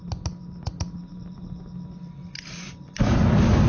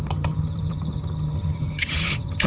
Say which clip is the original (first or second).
first